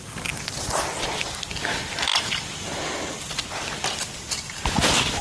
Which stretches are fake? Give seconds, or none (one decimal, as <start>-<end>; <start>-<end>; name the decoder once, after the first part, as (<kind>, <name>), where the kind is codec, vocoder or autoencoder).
none